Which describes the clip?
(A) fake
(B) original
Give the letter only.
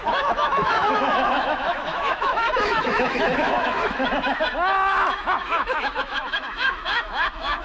A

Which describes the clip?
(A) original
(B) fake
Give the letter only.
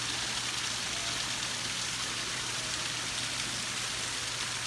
A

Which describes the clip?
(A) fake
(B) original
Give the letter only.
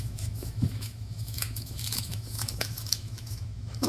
A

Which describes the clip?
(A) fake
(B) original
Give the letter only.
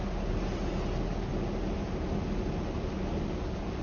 B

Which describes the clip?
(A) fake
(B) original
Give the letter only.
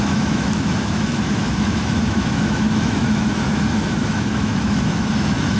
A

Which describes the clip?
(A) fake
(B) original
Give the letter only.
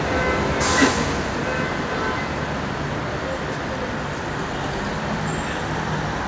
B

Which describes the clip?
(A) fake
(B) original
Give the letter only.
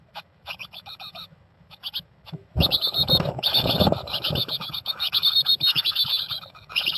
A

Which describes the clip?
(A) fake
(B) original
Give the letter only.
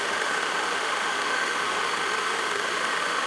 A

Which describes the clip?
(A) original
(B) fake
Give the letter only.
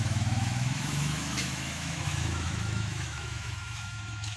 B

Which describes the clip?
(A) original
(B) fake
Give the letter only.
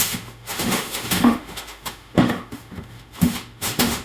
B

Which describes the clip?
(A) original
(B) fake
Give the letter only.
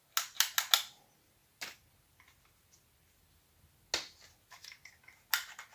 A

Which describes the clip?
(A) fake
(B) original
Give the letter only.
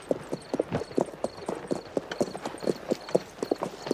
B